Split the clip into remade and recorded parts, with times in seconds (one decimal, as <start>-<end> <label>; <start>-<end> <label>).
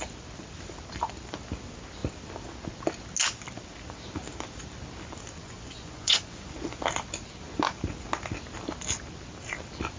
0.0-5.4 recorded; 5.4-6.5 remade; 6.5-10.0 recorded